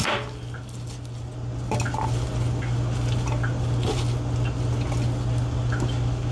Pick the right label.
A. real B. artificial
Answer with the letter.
A